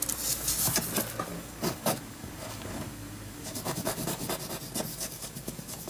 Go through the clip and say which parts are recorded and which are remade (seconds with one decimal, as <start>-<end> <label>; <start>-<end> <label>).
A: 0.0-1.3 recorded; 1.3-4.3 remade; 4.3-4.9 recorded; 4.9-5.9 remade